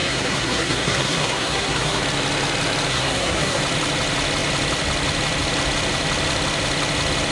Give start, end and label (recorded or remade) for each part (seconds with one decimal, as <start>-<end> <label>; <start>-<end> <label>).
0.0-2.0 remade; 2.0-2.9 recorded; 2.9-3.6 remade; 3.6-7.3 recorded